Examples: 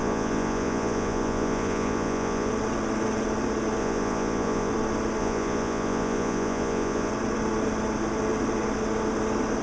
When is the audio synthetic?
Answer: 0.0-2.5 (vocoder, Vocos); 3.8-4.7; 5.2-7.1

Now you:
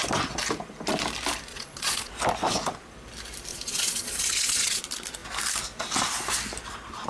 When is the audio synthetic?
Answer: 1.5-2.1 (vocoder, Vocos); 3.5-4.8

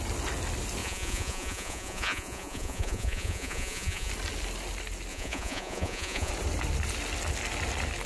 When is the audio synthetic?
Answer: 0.8-4.1 (vocoder, Vocos); 5.1-6.3